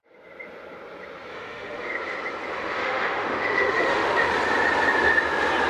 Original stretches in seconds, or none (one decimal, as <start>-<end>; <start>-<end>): 0.0-1.3; 1.9-2.5; 4.3-5.7